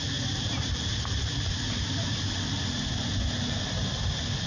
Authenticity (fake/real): fake